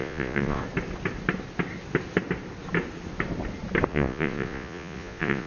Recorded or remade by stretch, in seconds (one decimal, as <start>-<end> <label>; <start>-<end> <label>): 0.0-0.6 remade; 0.6-3.9 recorded; 3.9-5.5 remade